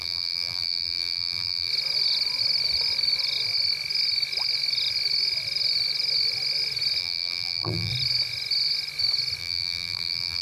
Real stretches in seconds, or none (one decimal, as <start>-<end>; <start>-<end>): 1.7-7.0; 7.9-9.4